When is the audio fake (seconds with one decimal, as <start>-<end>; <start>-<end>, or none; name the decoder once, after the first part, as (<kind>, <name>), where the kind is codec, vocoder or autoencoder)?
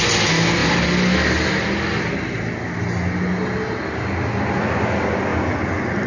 none